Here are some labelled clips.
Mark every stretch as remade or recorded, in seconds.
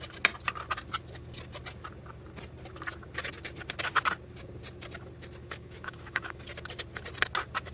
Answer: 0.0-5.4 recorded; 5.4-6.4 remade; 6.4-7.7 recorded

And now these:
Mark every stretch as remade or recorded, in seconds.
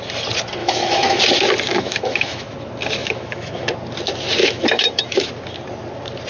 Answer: 0.0-0.6 recorded; 0.6-1.2 remade; 1.2-1.7 recorded; 1.7-2.5 remade; 2.5-3.0 recorded; 3.0-3.7 remade; 3.7-4.4 recorded; 4.4-5.3 remade; 5.3-6.3 recorded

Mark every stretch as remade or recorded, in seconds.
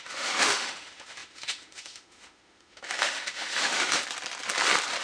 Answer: 0.0-4.0 remade; 4.0-5.0 recorded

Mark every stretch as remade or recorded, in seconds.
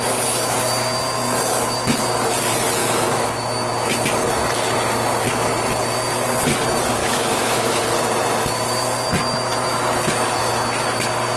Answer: 0.0-2.8 recorded; 2.8-3.3 remade; 3.3-7.0 recorded; 7.0-7.8 remade; 7.8-11.4 recorded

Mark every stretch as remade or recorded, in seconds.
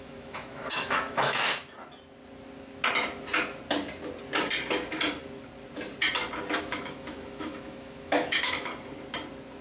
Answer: 0.0-1.5 remade; 1.5-6.6 recorded; 6.6-8.7 remade; 8.7-9.6 recorded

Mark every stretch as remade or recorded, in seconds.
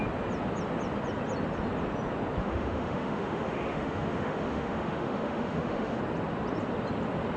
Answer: 0.0-2.4 recorded; 2.4-6.0 remade; 6.0-7.4 recorded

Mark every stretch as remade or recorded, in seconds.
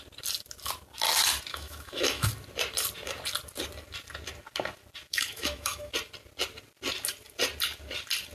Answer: 0.0-1.5 recorded; 1.5-2.3 remade; 2.3-5.1 recorded; 5.1-5.9 remade; 5.9-8.3 recorded